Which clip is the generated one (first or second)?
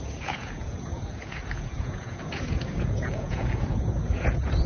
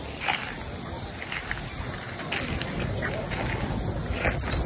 first